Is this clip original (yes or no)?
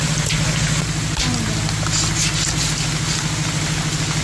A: yes